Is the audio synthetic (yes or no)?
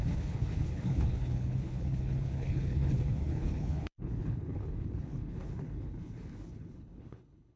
yes